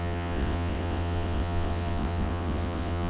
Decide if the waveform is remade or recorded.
remade